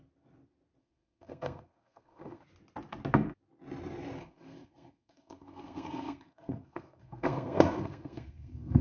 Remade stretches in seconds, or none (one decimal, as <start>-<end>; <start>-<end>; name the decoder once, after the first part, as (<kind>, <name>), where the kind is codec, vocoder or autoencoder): 0.8-2.4 (codec, SNAC); 4.2-8.8